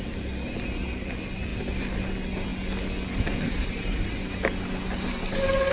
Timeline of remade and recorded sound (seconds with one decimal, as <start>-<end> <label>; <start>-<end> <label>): 0.0-5.7 recorded